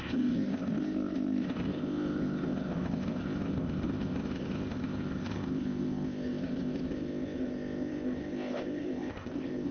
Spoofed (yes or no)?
yes